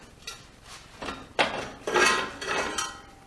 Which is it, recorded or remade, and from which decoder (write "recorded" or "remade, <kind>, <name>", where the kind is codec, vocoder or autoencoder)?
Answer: recorded